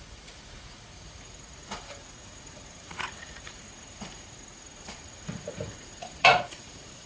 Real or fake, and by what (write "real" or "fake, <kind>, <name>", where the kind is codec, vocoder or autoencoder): fake, vocoder, Vocos